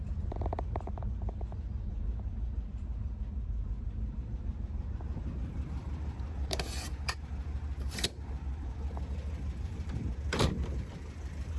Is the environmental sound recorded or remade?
remade